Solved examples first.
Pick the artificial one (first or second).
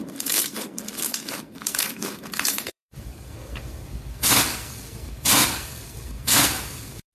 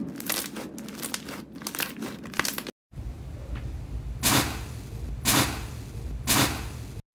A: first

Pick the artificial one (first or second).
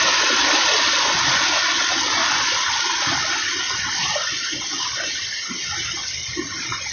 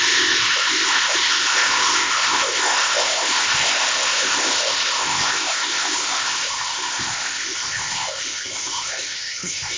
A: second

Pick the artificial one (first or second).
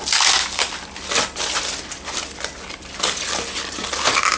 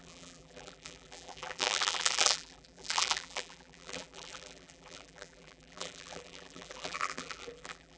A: second